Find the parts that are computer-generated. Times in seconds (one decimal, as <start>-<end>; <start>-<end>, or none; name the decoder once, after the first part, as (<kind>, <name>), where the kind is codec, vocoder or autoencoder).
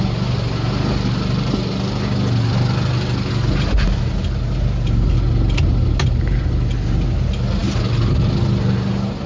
none